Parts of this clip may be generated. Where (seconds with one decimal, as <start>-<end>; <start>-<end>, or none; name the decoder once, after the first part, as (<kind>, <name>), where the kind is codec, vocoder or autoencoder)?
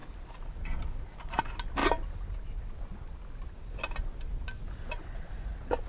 none